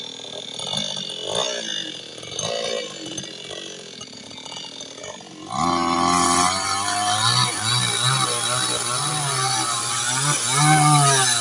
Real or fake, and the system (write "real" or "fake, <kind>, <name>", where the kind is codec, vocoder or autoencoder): real